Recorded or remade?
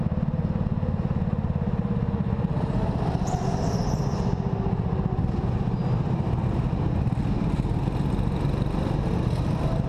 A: recorded